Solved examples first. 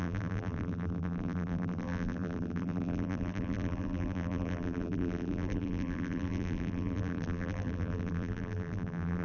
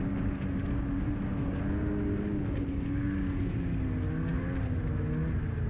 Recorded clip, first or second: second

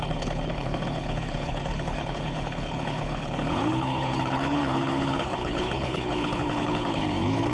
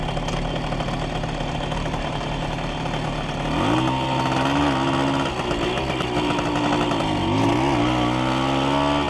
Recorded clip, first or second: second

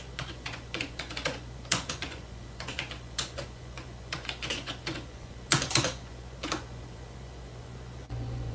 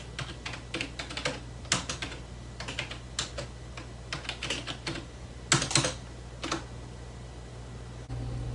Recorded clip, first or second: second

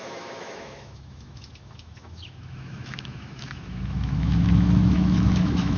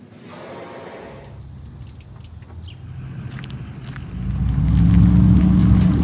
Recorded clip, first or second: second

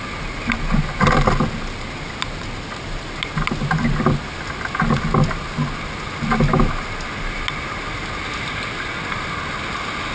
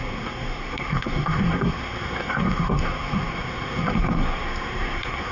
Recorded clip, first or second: first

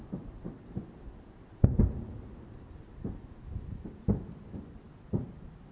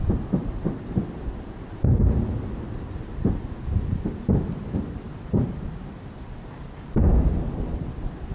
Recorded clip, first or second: first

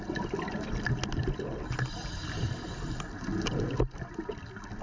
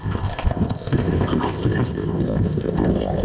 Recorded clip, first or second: first